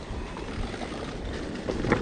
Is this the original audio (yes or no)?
yes